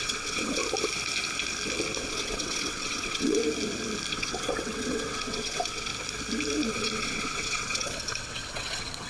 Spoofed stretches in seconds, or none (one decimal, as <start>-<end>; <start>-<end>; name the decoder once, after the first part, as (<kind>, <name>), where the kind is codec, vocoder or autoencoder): 0.0-0.6 (vocoder, WaveNeXt); 2.1-3.4; 4.1-5.9; 6.7-9.1